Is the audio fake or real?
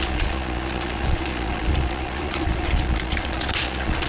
fake